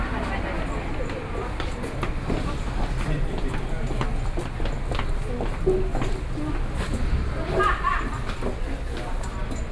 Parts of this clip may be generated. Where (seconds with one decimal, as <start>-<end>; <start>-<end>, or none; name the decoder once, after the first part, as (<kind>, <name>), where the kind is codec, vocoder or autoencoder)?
none

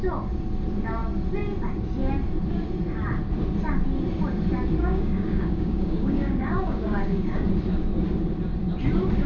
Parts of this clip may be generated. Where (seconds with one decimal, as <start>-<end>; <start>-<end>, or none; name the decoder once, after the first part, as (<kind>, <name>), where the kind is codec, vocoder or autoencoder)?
4.8-7.5 (codec, DAC)

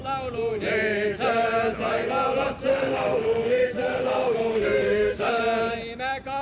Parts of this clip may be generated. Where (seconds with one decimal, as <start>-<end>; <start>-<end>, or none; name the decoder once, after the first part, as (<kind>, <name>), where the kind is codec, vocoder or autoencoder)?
2.7-5.4 (autoencoder, DAC-VAE)

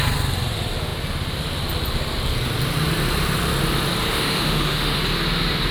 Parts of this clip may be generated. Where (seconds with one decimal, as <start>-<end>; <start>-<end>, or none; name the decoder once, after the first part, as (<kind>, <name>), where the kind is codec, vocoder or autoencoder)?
4.1-5.0 (autoencoder, DAC-VAE)

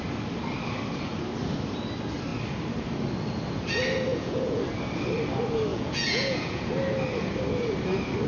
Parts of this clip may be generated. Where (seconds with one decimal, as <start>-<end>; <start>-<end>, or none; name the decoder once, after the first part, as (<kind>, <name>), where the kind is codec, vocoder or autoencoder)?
4.1-4.6 (vocoder, Vocos); 5.7-6.7

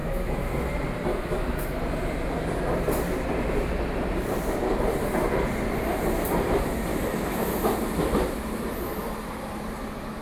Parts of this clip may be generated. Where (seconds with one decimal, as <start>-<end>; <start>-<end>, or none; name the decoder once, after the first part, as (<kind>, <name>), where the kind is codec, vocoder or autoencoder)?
0.0-0.5 (autoencoder, DAC-VAE); 1.1-1.8; 6.9-7.5

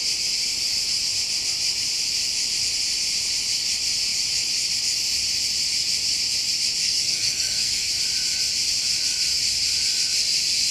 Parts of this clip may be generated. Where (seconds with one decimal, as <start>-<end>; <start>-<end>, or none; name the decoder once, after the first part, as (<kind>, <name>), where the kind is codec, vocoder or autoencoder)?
6.8-7.9 (codec, SNAC)

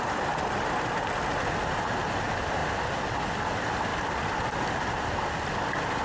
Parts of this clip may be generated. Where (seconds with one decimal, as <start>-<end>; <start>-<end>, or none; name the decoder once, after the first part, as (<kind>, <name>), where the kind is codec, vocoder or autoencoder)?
none